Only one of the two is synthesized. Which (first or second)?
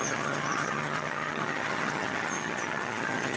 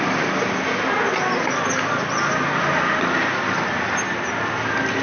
first